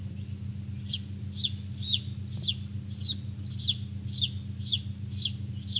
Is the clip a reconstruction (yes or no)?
no